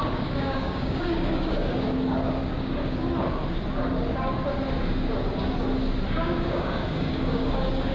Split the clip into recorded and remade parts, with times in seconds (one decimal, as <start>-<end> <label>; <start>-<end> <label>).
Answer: 0.0-3.4 remade; 3.4-6.2 recorded; 6.2-7.9 remade